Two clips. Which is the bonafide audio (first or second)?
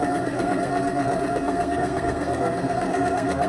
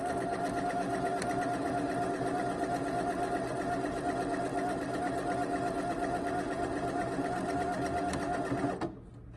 second